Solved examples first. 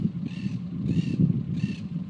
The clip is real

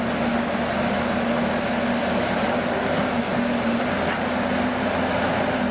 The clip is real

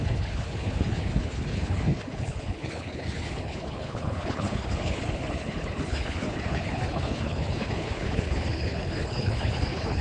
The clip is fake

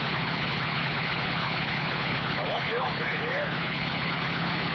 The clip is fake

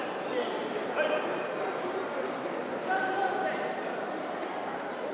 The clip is real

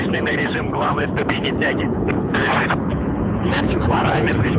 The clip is fake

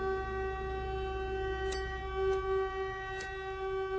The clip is real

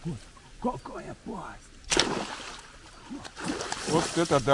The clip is real